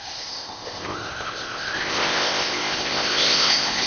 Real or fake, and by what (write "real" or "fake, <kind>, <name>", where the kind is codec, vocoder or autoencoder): fake, codec, ZipCodec